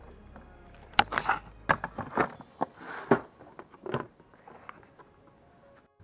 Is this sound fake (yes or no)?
no